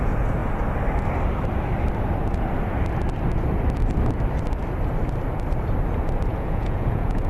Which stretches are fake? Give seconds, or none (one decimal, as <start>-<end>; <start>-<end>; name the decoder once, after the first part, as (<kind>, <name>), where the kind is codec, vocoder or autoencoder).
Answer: 6.3-7.3 (vocoder, Vocos)